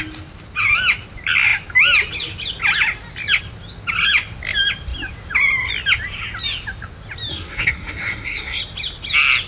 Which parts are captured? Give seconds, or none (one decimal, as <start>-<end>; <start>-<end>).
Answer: 0.0-7.3; 8.6-9.5